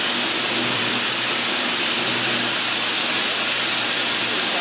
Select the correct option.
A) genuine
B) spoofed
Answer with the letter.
B